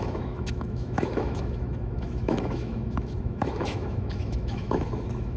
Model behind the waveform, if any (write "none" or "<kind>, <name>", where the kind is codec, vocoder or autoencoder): autoencoder, DAC-VAE